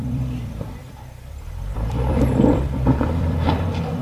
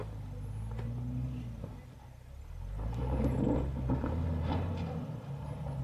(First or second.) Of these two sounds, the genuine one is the second